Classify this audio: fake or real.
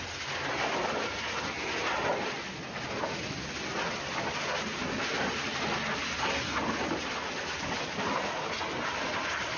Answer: real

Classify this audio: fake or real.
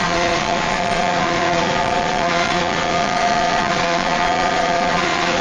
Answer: fake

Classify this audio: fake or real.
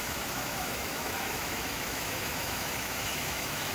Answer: fake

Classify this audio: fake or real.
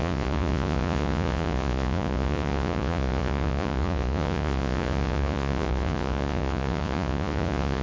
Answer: fake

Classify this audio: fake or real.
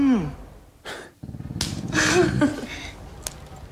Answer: real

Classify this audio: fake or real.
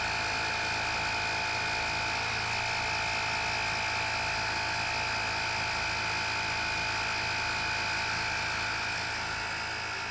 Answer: real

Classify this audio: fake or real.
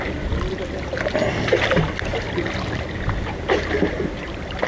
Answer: real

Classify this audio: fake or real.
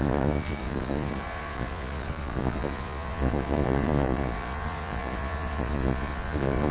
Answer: fake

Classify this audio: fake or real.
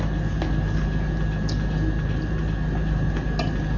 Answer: real